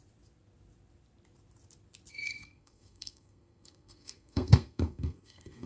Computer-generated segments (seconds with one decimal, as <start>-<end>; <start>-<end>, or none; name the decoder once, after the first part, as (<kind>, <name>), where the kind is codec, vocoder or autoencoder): 2.1-5.7 (codec, SNAC)